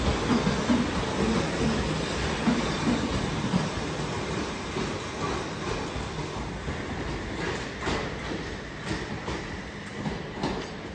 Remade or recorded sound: recorded